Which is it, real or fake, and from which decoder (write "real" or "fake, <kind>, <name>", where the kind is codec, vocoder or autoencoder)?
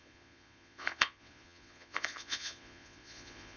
fake, vocoder, Vocos